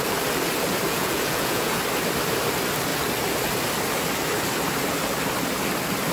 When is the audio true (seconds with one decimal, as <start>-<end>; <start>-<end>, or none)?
0.0-0.9; 1.8-6.1